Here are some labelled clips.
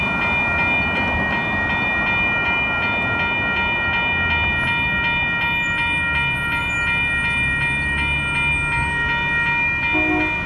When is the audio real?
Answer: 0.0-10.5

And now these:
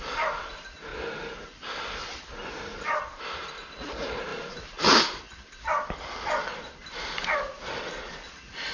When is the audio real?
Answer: 0.0-4.3; 4.8-8.7

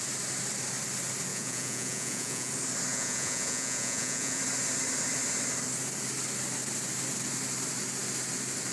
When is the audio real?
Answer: 0.0-1.3; 2.5-2.9; 4.4-8.7

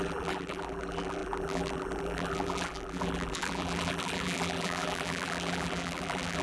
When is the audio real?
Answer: none

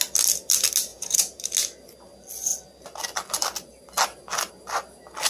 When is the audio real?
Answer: 0.0-0.9; 1.4-5.3

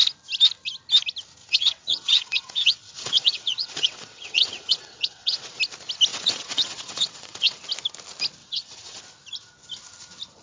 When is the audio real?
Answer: 0.0-1.4; 5.6-6.1; 7.6-8.4; 9.0-10.4

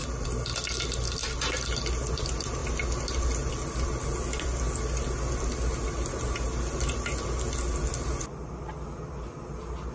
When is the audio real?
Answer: 0.0-9.9

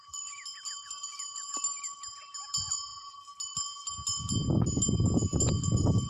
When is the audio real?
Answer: 0.0-6.1